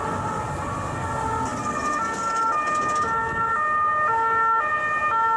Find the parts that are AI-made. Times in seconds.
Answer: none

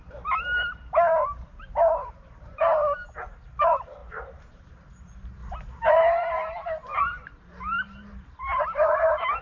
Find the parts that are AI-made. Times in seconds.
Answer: 0.0-5.4 (vocoder, BigVGAN v2); 5.9-9.4

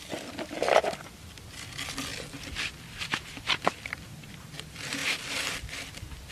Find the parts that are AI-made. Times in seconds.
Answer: none

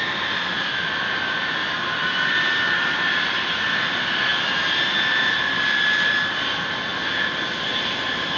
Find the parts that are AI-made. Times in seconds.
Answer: none